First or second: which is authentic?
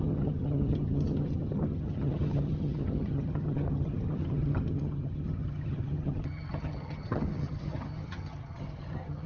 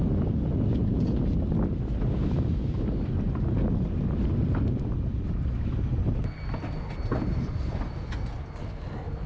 second